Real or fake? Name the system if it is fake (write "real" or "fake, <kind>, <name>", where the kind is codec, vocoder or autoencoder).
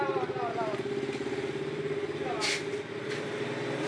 real